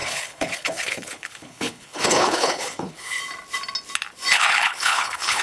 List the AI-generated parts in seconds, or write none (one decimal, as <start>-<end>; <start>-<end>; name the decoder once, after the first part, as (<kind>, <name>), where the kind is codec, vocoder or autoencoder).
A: 0.0-3.2 (codec, HILCodec); 4.3-5.4